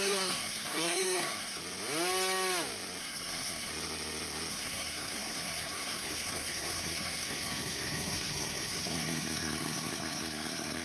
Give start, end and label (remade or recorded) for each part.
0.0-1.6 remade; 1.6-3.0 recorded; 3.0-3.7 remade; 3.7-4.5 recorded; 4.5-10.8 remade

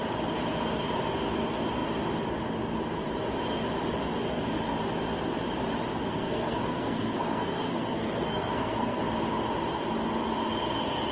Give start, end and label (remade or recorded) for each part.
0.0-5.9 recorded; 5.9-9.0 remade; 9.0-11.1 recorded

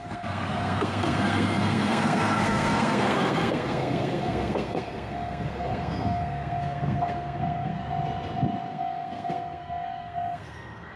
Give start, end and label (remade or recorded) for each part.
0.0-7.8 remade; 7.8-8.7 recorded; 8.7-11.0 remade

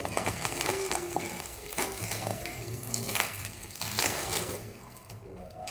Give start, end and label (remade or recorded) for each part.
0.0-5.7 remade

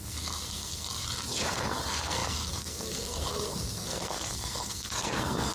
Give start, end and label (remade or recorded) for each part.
0.0-1.0 remade; 1.0-1.5 recorded; 1.5-5.5 remade

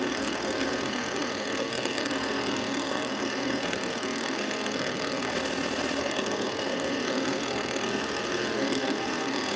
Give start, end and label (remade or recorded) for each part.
0.0-5.3 remade; 5.3-6.0 recorded; 6.0-9.6 remade

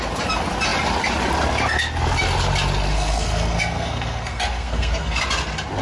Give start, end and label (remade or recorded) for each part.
0.0-2.9 recorded; 2.9-5.2 remade; 5.2-5.8 recorded